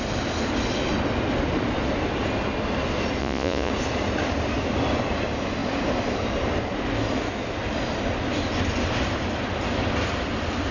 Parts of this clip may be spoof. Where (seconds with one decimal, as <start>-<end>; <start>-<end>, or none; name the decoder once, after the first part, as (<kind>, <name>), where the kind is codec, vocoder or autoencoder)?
3.2-3.7 (vocoder, Vocos)